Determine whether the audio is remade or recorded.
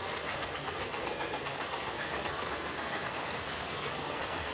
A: remade